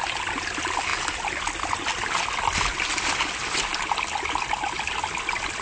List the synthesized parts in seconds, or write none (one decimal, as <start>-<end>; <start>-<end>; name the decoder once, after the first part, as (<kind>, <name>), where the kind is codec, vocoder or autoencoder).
none